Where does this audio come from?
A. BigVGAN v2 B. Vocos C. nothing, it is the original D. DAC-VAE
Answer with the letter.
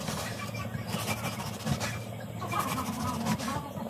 C